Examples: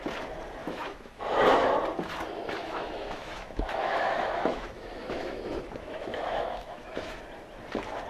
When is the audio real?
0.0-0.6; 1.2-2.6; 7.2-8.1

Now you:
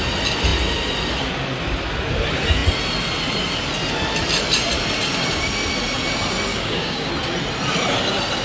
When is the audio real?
0.0-6.5; 7.1-8.4

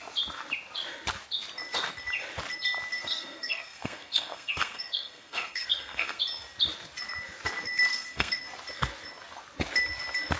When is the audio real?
0.0-2.9; 6.2-7.9; 8.4-10.4

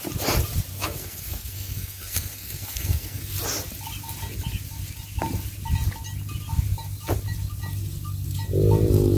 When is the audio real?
0.0-0.7; 3.3-9.2

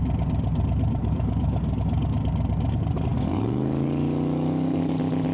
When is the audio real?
0.0-1.0; 2.2-3.1; 4.8-5.3

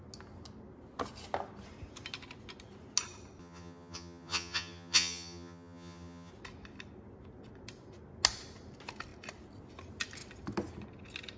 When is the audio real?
0.0-3.4; 6.3-11.4

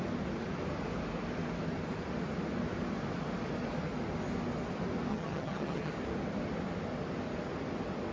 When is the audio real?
0.0-5.1; 5.9-8.1